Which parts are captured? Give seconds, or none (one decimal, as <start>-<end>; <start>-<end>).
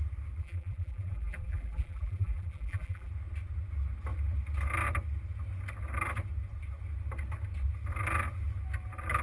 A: 0.0-0.4; 3.1-9.2